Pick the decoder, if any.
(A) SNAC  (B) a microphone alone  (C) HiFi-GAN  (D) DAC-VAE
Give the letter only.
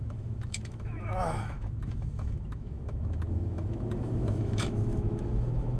D